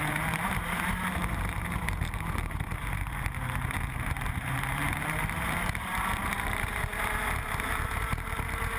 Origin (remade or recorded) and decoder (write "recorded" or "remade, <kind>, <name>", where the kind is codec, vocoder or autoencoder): remade, vocoder, BigVGAN v2